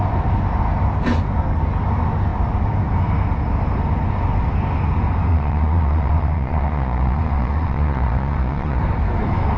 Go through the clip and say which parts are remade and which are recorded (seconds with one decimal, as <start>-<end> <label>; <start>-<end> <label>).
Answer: 0.0-5.3 recorded; 5.3-8.8 remade; 8.8-9.6 recorded